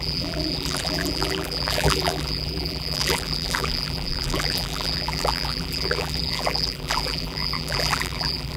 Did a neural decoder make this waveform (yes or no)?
yes